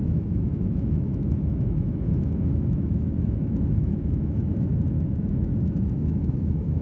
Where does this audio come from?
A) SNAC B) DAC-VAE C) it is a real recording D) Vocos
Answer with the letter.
B